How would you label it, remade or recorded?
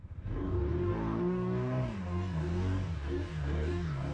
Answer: remade